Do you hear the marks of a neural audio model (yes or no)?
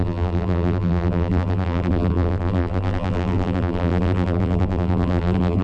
yes